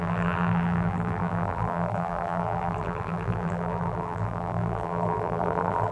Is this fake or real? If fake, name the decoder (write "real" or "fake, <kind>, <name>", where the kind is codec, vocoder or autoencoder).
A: fake, vocoder, BigVGAN v2